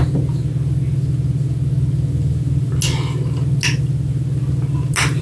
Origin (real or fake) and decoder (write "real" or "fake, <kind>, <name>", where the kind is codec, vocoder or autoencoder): real